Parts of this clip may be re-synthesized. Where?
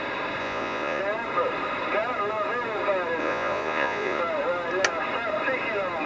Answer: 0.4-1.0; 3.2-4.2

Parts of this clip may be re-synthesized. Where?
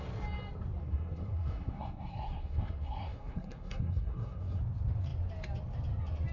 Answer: 0.8-4.6